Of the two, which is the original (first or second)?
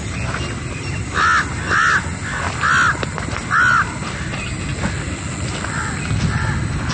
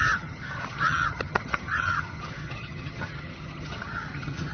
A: first